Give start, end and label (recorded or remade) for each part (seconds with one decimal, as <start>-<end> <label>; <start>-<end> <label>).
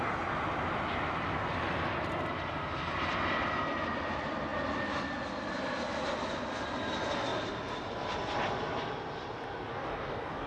0.0-9.7 recorded; 9.7-10.5 remade